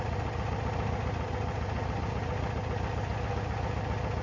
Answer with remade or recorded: recorded